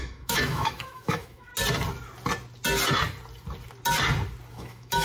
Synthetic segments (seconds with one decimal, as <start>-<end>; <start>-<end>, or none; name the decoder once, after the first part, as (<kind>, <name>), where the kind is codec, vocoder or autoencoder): 0.0-1.5 (autoencoder, DAC-VAE); 4.5-5.0